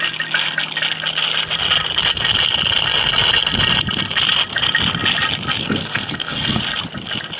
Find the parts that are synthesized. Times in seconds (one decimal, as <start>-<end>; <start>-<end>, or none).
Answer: 5.6-6.6